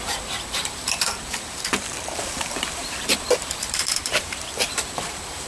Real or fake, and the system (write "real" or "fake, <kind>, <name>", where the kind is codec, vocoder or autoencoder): fake, vocoder, BigVGAN v2